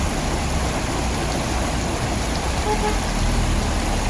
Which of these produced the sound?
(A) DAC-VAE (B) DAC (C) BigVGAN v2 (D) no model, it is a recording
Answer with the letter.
D